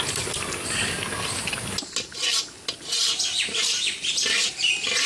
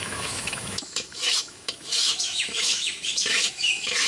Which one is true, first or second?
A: first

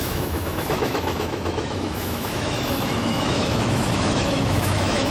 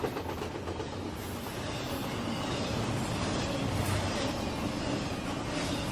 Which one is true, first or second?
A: second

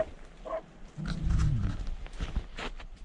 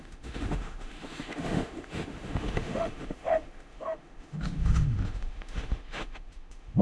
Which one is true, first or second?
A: first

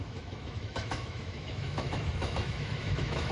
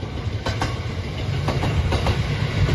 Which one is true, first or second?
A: second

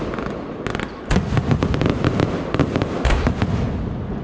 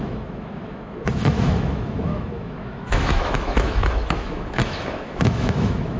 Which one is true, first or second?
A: first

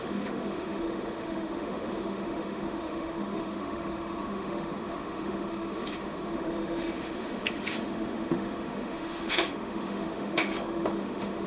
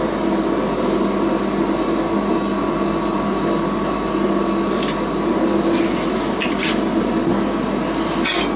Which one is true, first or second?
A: second